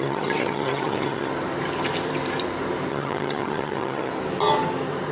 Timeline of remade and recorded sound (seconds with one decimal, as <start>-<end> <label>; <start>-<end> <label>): 0.0-1.3 remade; 1.3-2.9 recorded; 2.9-4.1 remade; 4.1-5.1 recorded